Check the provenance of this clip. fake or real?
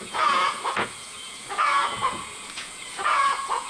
fake